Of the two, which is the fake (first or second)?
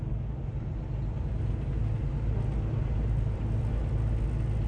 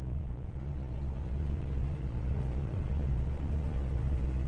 second